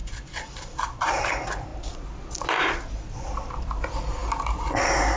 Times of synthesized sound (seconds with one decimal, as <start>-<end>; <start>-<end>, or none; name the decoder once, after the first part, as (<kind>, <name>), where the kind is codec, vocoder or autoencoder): 0.0-1.2 (vocoder, BigVGAN v2)